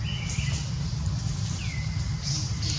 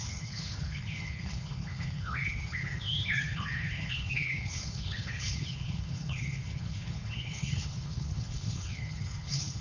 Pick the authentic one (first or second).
first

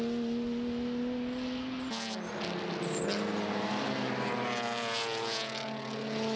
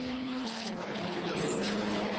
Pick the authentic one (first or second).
first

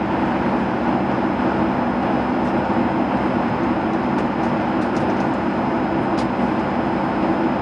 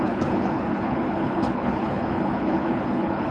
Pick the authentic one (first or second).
first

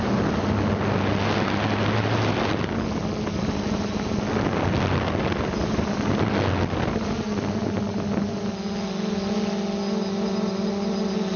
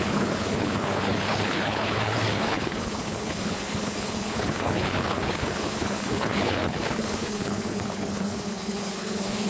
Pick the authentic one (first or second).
first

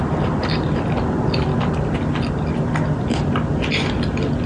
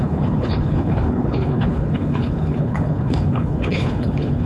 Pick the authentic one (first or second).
first